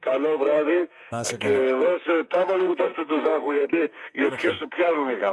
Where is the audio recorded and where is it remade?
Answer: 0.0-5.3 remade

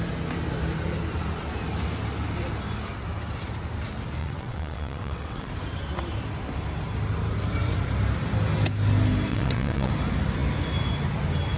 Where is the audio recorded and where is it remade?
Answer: 0.0-4.2 recorded; 4.2-5.5 remade; 5.5-9.3 recorded; 9.3-9.9 remade; 9.9-11.6 recorded

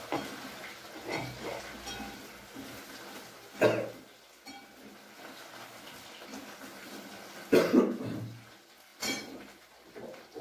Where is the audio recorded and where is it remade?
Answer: 0.0-8.9 recorded; 8.9-9.6 remade; 9.6-10.4 recorded

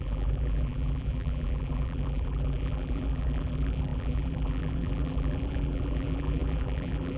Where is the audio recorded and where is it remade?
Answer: 0.0-7.2 remade